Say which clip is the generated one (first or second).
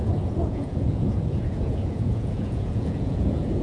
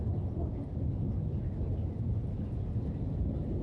first